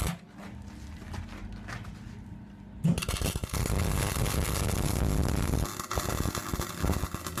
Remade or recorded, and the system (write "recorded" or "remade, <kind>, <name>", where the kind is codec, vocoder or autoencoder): recorded